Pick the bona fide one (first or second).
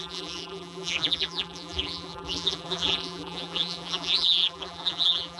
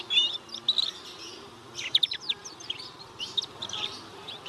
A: second